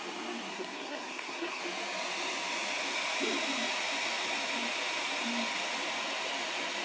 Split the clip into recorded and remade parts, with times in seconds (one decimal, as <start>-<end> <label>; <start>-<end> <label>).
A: 0.0-0.5 recorded; 0.5-1.6 remade; 1.6-6.8 recorded